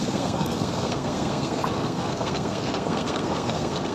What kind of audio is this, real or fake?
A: fake